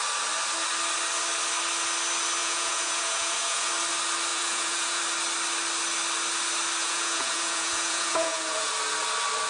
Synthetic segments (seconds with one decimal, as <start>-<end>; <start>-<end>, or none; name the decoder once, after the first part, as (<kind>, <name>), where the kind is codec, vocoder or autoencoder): 2.4-3.7 (vocoder, Vocos); 4.3-5.0; 6.8-8.7